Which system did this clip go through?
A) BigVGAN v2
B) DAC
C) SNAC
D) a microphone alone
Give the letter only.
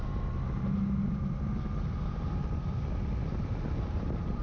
D